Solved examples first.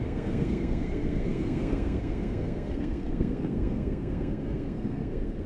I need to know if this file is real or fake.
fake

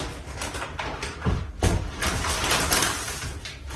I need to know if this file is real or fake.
real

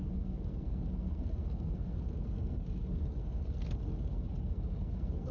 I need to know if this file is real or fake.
fake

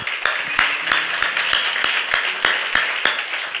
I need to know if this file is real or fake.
real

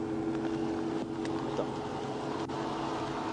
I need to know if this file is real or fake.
real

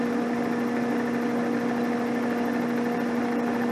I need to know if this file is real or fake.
real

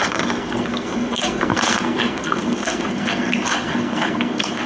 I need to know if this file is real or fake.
fake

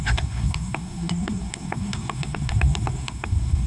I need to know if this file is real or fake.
fake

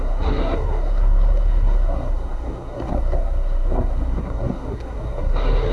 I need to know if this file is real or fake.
fake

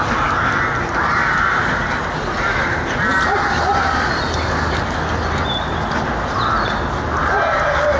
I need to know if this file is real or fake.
real